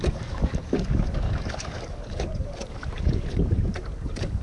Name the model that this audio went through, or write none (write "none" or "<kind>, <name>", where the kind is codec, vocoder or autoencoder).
codec, DAC